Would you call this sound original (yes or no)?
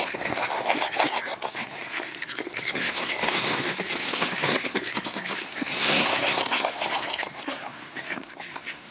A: no